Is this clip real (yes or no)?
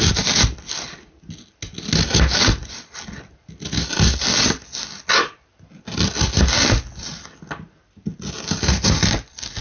yes